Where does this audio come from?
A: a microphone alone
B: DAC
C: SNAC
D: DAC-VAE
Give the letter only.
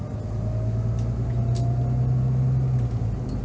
A